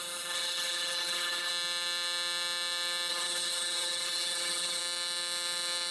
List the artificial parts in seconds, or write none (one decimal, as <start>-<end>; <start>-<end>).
0.0-1.5; 3.1-4.8